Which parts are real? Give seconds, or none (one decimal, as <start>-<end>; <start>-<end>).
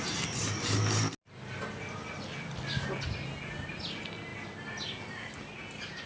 0.0-6.1